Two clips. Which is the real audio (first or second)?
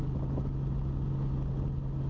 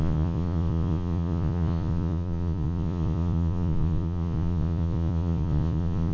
first